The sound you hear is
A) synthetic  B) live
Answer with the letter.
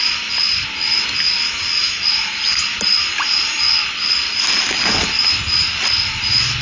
B